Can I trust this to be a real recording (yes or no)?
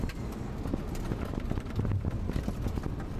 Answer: yes